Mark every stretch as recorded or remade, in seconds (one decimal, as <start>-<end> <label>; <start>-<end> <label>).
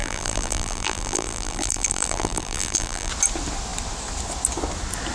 0.0-3.1 remade; 3.1-5.1 recorded